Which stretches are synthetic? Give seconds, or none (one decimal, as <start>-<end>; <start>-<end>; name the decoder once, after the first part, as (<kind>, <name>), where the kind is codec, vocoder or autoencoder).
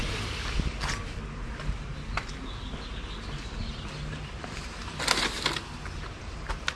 4.0-4.8 (vocoder, BigVGAN v2); 6.2-6.8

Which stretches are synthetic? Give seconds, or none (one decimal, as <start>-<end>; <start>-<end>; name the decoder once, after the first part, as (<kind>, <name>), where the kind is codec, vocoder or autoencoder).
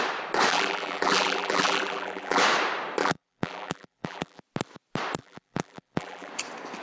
0.5-2.4 (vocoder, BigVGAN v2); 3.0-4.4; 5.2-6.3